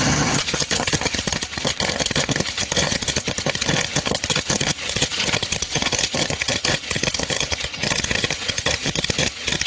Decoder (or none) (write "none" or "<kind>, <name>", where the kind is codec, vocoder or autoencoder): vocoder, HiFi-GAN